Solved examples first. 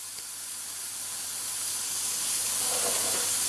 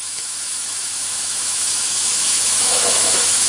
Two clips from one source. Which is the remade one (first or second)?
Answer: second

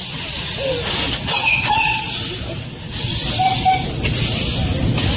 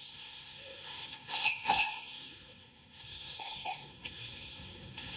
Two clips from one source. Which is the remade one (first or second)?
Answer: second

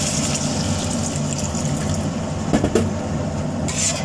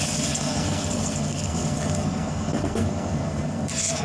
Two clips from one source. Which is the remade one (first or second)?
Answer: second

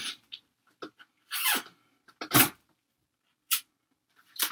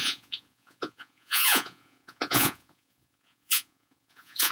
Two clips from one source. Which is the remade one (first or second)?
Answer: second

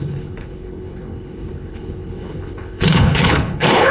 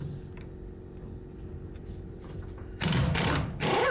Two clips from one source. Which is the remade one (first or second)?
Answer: first